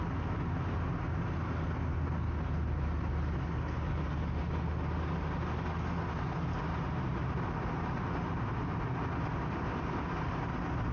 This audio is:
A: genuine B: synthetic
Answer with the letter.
A